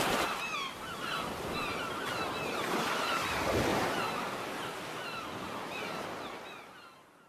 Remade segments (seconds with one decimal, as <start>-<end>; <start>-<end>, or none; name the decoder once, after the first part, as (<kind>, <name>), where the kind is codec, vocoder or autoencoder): 3.7-5.8 (vocoder, BigVGAN v2)